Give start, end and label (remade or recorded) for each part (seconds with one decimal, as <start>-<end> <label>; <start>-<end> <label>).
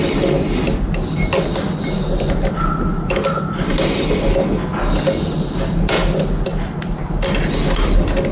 0.0-8.3 recorded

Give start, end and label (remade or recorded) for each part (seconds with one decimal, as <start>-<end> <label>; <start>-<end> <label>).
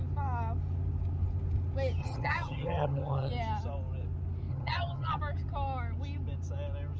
0.0-2.0 recorded; 2.0-3.3 remade; 3.3-4.5 recorded; 4.5-5.2 remade; 5.2-7.0 recorded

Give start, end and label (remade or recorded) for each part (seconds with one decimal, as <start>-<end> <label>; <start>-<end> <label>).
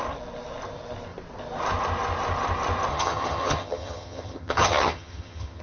0.0-2.9 recorded; 2.9-5.6 remade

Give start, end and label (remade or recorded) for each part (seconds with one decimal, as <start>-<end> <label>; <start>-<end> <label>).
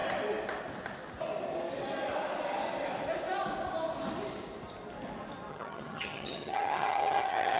0.0-5.5 recorded; 5.5-7.6 remade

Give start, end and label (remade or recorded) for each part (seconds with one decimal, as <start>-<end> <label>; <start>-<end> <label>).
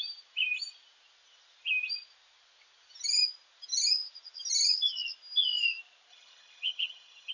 0.0-6.1 recorded; 6.1-7.3 remade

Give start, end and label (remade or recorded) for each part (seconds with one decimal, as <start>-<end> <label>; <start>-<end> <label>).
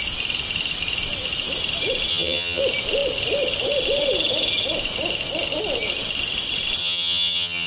0.0-2.1 recorded; 2.1-2.6 remade; 2.6-6.8 recorded; 6.8-7.7 remade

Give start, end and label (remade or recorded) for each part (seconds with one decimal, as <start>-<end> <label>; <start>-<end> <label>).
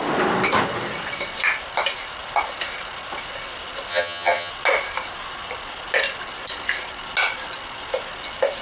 0.0-3.9 recorded; 3.9-4.5 remade; 4.5-8.6 recorded